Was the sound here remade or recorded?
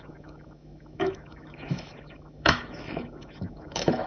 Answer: remade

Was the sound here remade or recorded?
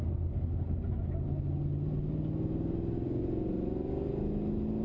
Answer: recorded